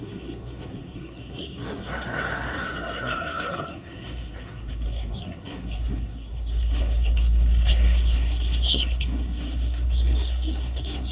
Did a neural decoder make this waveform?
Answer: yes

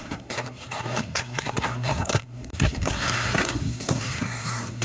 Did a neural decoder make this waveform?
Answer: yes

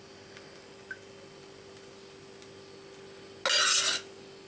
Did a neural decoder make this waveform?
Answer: no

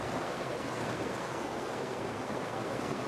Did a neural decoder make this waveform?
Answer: yes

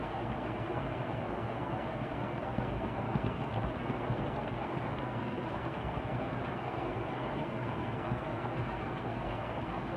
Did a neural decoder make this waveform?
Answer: yes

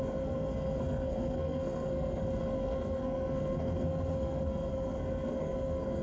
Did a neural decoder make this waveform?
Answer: yes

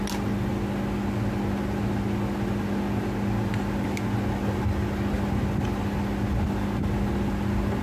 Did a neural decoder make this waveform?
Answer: no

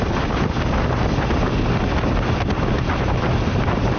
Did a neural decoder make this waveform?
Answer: no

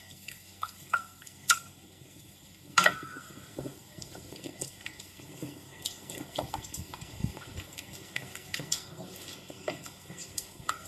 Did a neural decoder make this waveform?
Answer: yes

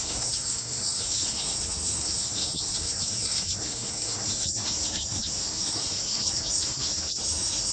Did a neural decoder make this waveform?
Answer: yes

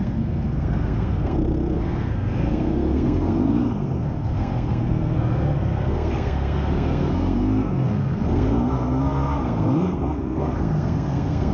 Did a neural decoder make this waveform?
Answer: yes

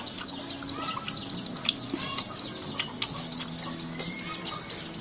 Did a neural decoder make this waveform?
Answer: no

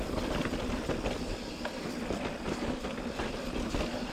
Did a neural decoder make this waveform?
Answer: no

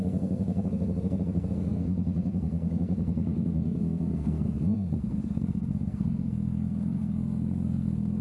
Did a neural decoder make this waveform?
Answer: yes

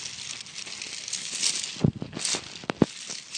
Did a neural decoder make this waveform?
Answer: no